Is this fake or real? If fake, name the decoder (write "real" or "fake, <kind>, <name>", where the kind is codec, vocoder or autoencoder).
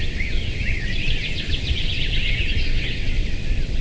fake, vocoder, WaveNeXt